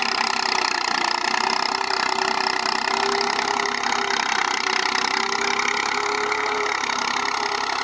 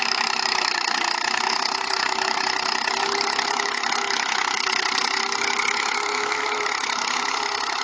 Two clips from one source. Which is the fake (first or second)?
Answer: second